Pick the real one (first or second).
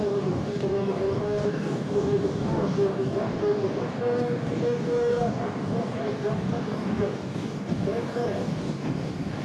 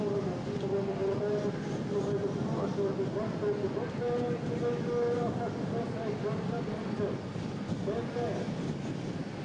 second